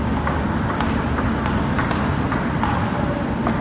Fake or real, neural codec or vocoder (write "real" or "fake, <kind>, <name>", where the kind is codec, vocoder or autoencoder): real